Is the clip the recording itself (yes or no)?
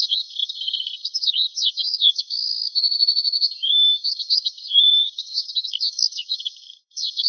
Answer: no